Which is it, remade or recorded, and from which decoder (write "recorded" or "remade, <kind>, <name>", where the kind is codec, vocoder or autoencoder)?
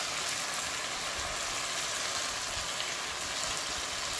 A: recorded